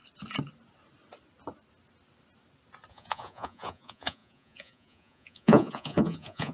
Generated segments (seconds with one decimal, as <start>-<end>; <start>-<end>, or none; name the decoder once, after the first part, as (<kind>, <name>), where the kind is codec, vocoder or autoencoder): 2.9-6.5 (vocoder, Vocos)